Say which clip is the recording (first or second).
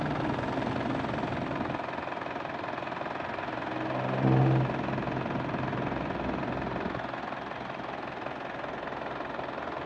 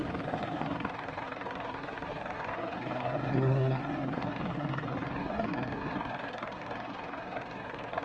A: first